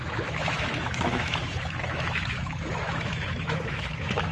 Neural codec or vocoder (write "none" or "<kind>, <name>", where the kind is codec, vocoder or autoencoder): autoencoder, DAC-VAE